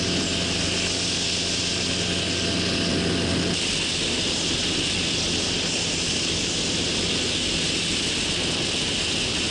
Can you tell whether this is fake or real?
real